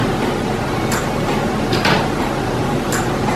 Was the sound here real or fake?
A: real